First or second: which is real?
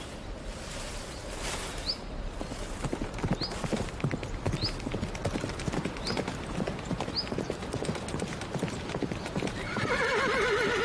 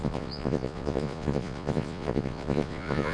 first